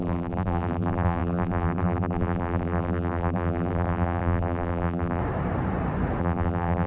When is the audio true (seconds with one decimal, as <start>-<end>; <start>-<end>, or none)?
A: 5.2-6.2